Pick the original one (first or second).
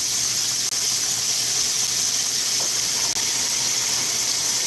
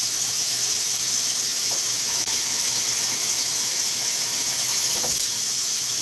first